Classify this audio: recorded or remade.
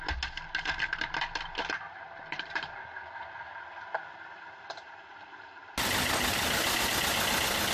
recorded